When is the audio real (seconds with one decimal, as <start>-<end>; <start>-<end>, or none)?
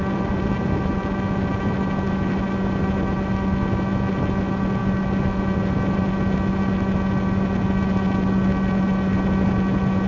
0.0-10.1